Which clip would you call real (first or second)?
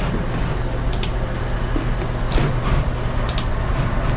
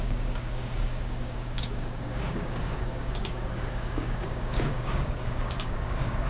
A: first